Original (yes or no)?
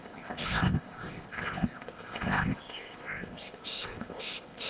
no